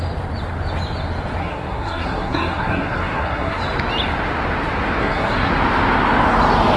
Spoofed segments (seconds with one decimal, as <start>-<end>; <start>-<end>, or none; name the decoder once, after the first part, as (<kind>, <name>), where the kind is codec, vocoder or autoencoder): 1.4-3.6 (codec, SNAC); 5.0-5.5